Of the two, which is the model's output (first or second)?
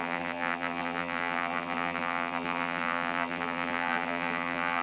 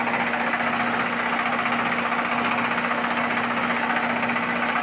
first